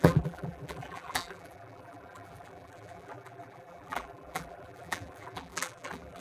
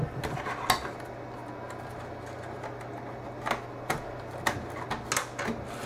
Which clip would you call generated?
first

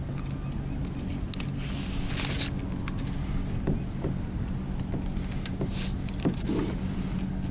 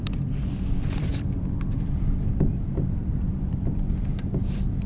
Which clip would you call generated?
second